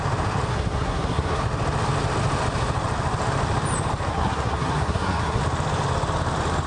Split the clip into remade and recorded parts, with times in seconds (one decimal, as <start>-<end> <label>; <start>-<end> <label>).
0.0-0.5 recorded; 0.5-1.4 remade; 1.4-4.1 recorded; 4.1-5.4 remade; 5.4-6.7 recorded